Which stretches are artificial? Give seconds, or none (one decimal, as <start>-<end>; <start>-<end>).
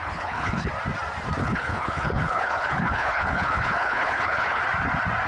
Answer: 0.0-0.7; 1.4-4.6